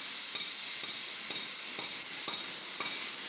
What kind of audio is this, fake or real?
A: real